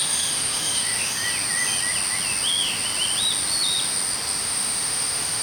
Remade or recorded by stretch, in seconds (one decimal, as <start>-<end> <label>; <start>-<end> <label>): 0.0-1.2 remade; 1.2-4.4 recorded; 4.4-5.4 remade